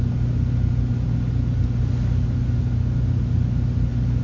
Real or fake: real